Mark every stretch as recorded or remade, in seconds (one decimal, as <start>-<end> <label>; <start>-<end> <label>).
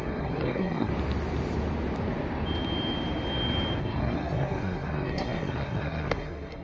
0.0-0.9 remade; 0.9-3.8 recorded; 3.8-6.6 remade